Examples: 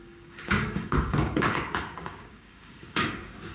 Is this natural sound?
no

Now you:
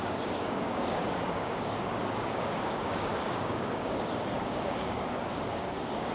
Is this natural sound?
no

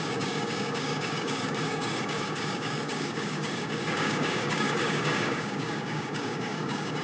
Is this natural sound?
no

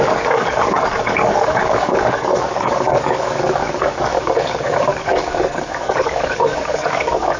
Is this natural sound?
no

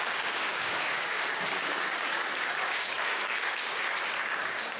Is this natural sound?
no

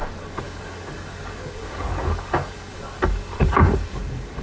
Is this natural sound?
no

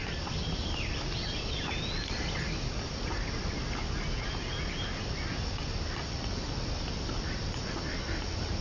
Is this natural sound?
yes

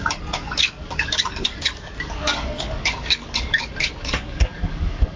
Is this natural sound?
no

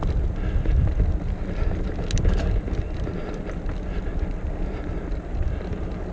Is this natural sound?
yes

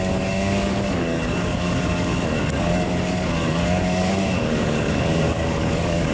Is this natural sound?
no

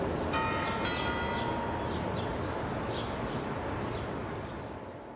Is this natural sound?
yes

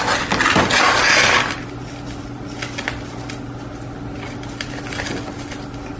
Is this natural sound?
yes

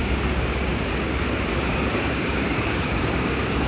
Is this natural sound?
no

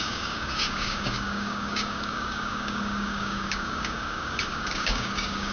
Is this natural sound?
no